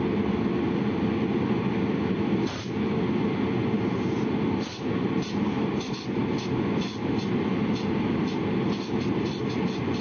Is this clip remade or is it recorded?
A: recorded